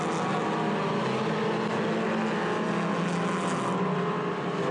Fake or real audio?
real